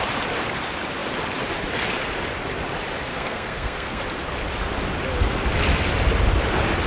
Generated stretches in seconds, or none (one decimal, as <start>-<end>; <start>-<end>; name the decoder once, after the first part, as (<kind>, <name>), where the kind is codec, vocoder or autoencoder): 3.1-4.0 (codec, SNAC)